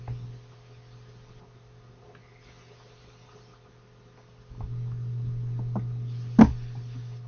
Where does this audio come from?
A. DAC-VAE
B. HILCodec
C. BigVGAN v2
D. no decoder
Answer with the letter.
D